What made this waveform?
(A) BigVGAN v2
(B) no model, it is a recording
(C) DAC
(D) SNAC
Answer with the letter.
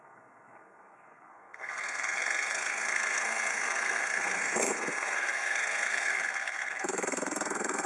D